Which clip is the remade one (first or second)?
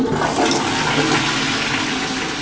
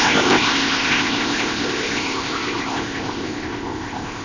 second